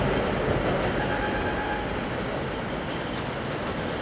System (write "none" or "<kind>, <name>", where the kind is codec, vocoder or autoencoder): none